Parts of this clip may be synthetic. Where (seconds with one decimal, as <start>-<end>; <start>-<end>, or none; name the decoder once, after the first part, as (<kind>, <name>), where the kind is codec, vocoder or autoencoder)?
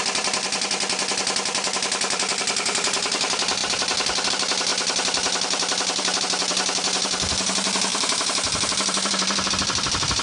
0.0-10.2 (vocoder, BigVGAN v2)